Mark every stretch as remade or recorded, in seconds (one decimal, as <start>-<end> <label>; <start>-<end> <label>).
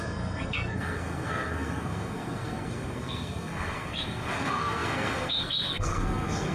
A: 0.0-6.5 remade